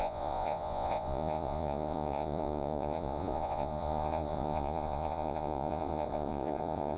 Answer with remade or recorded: remade